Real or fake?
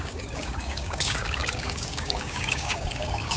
fake